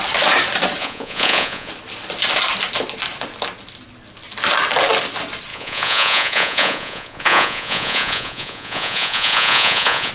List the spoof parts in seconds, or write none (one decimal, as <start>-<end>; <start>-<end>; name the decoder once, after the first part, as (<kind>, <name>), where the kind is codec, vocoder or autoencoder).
0.8-1.7 (vocoder, Vocos); 5.5-10.1